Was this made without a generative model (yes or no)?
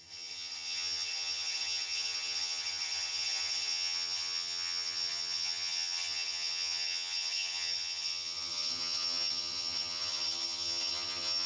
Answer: no